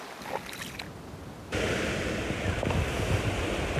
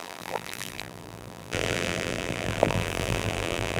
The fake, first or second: second